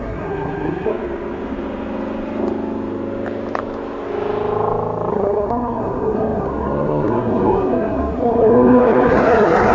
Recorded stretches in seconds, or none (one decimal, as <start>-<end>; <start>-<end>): 0.9-5.1